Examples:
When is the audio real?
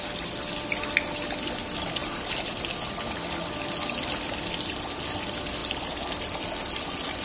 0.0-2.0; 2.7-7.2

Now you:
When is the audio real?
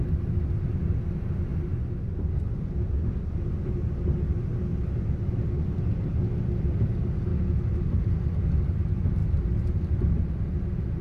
0.0-11.0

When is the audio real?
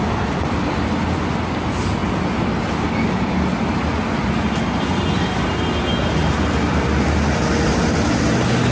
0.0-8.7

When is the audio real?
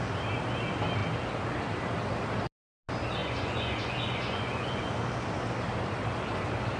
0.0-3.2; 4.8-6.8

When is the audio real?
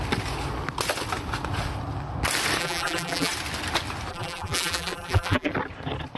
0.0-2.6; 3.3-4.1; 5.5-6.2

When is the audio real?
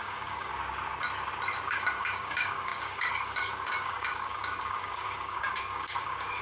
0.5-1.7